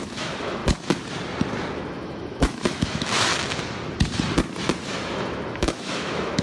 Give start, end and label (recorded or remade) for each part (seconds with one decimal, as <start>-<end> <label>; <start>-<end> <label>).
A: 0.0-0.6 remade; 0.6-1.7 recorded; 1.7-3.3 remade; 3.3-4.8 recorded; 4.8-6.4 remade